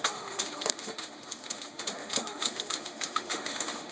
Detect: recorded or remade remade